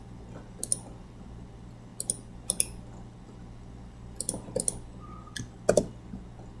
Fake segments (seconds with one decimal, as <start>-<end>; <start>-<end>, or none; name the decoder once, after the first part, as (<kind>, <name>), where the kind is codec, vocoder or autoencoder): 0.7-1.2 (vocoder, BigVGAN v2)